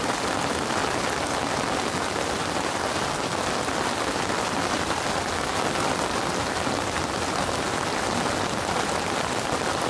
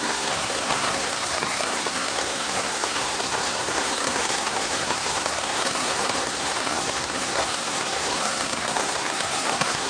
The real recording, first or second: first